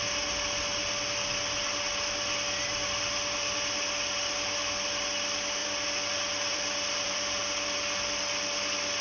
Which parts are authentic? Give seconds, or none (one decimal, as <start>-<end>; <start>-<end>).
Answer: 0.0-5.6; 7.4-9.0